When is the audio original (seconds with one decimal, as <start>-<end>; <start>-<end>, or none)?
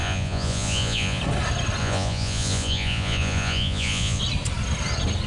1.2-1.8; 4.2-5.3